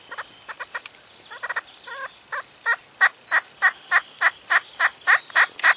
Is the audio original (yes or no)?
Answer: yes